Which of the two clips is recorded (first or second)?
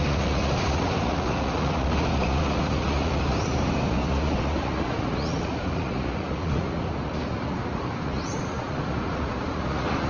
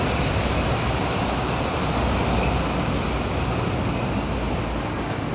second